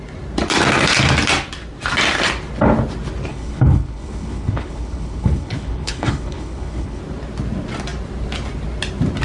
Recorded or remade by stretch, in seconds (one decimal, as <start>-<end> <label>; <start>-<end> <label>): 0.0-3.3 recorded; 3.3-7.0 remade; 7.0-9.2 recorded